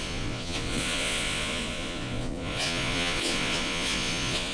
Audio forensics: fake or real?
fake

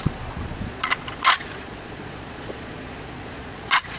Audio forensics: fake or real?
fake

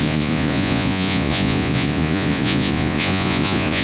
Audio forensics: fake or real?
fake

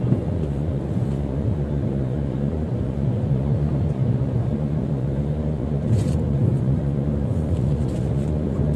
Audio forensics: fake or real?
fake